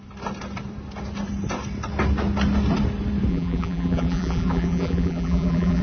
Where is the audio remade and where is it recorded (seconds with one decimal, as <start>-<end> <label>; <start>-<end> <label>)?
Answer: 0.0-3.3 recorded; 3.3-5.8 remade